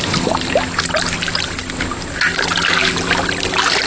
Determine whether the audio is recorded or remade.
recorded